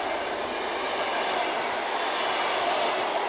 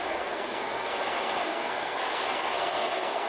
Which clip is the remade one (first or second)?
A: second